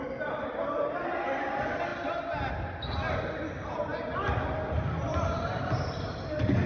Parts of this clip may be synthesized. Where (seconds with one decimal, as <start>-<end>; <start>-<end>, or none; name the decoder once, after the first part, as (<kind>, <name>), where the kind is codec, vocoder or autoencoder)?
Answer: none